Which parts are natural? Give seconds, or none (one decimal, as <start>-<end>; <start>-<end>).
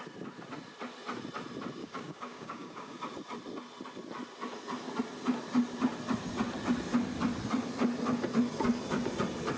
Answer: 0.0-1.8; 3.0-9.6